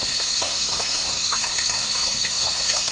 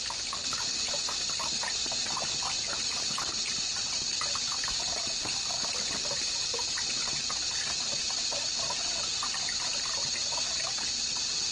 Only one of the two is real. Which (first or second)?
second